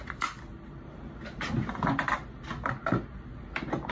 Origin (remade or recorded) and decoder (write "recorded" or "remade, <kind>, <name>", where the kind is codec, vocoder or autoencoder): recorded